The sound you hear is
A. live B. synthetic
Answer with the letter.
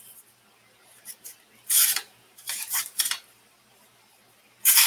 B